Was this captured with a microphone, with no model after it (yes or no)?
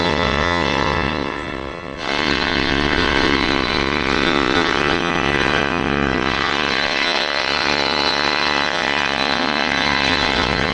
no